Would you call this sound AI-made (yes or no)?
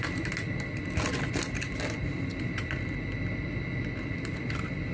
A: no